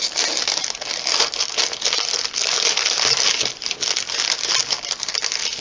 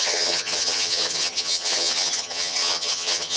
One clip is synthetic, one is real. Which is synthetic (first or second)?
second